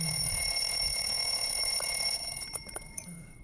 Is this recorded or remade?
remade